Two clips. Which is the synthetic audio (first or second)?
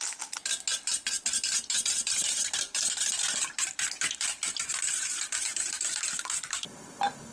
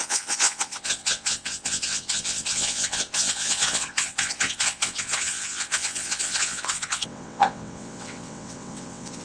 second